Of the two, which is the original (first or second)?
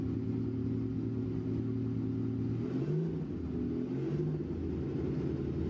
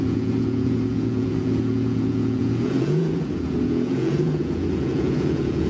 first